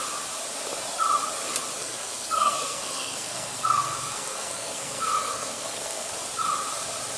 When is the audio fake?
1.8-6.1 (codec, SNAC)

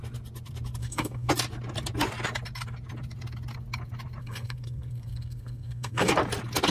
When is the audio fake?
0.8-1.3 (codec, SNAC); 4.2-6.1